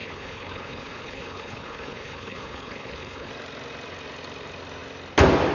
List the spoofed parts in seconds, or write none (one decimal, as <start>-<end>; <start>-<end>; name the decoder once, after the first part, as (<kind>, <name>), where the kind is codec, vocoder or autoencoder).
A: 0.0-3.3 (codec, HILCodec)